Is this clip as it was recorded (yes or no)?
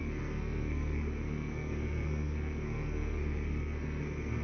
no